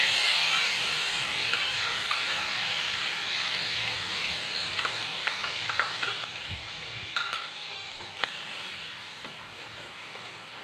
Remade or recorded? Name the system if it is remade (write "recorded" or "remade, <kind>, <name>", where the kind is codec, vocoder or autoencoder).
remade, codec, DAC